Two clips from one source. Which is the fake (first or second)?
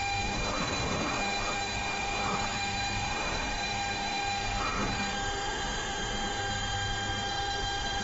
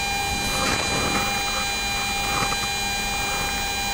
first